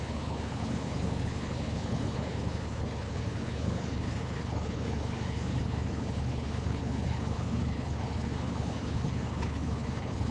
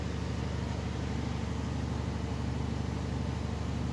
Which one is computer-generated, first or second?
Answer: first